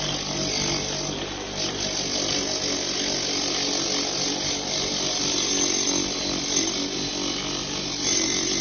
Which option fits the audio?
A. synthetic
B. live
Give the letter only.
B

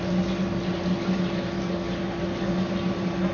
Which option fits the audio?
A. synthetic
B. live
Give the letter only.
B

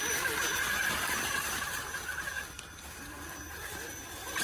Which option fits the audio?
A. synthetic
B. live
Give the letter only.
B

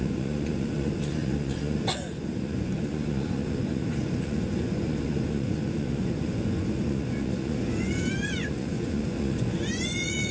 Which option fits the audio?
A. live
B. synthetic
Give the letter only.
B